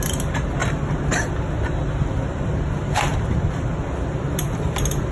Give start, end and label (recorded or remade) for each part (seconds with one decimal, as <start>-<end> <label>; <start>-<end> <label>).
0.0-5.1 recorded